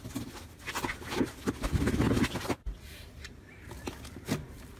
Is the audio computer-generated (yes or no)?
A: no